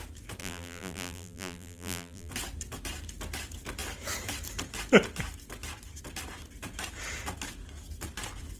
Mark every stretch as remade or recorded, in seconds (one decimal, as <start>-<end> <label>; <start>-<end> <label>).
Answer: 0.0-0.4 recorded; 0.4-2.3 remade; 2.3-8.6 recorded